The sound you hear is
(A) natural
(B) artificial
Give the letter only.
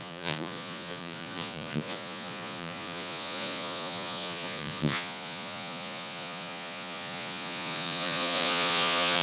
B